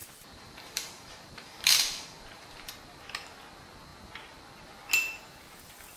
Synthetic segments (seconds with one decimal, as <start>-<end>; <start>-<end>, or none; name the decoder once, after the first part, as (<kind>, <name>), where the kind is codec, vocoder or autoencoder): 0.0-2.7 (vocoder, BigVGAN v2)